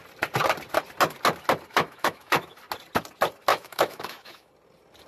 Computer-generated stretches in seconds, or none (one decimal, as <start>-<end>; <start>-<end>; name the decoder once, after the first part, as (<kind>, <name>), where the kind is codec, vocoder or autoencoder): 1.7-2.6 (autoencoder, DAC-VAE); 3.5-4.5